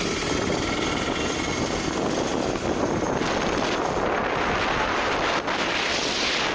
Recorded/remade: recorded